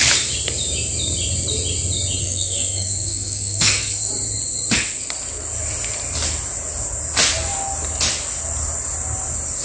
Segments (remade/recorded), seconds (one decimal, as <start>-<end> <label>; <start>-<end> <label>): 0.0-2.2 recorded; 2.2-4.1 remade; 4.1-9.6 recorded